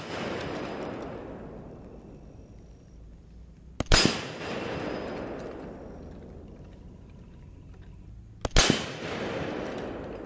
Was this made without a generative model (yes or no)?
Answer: yes